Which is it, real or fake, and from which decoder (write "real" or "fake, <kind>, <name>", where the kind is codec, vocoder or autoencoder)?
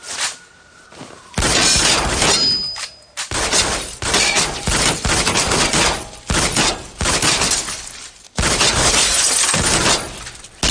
real